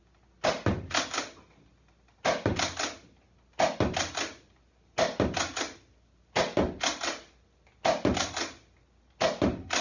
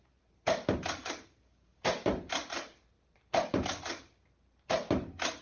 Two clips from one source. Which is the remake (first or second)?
second